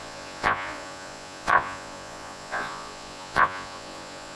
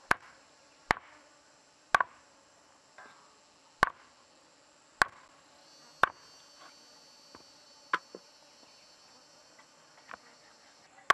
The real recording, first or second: second